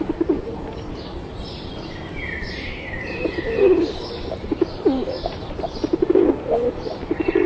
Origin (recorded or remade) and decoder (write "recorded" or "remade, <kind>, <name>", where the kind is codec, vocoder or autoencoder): remade, vocoder, BigVGAN v2